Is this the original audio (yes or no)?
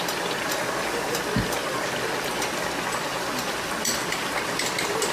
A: yes